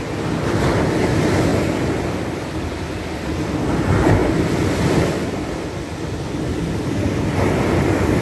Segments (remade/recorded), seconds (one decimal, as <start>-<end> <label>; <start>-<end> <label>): 0.0-8.2 recorded